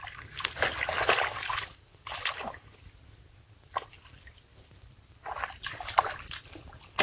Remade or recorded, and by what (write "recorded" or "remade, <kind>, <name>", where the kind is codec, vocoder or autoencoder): recorded